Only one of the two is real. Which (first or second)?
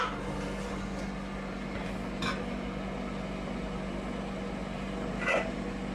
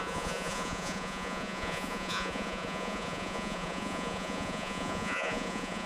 first